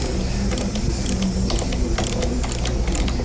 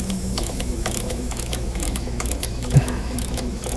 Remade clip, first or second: second